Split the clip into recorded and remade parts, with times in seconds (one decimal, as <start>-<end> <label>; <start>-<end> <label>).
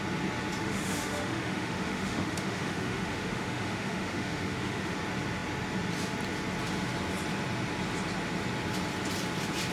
0.0-0.6 recorded; 0.6-4.9 remade; 4.9-9.7 recorded